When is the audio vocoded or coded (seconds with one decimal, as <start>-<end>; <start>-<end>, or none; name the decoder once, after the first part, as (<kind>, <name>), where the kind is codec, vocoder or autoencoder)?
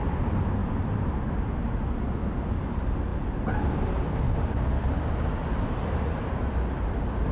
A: 0.6-1.4 (vocoder, BigVGAN v2)